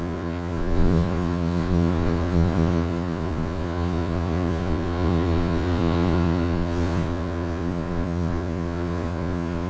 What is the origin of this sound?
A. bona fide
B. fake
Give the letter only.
B